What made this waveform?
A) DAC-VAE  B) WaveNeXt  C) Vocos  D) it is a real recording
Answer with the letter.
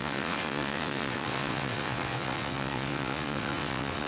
B